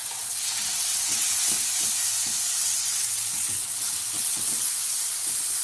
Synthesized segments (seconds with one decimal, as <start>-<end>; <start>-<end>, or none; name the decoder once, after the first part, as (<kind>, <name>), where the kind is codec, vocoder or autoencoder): 0.0-1.3 (vocoder, WaveNeXt); 2.6-4.7